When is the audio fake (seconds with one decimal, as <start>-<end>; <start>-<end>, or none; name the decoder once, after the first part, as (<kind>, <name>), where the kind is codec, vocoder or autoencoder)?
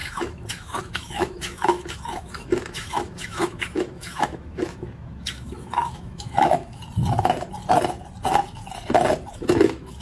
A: 0.0-6.8 (autoencoder, DAC-VAE); 9.3-10.0